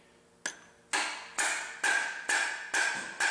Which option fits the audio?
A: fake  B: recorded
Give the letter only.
B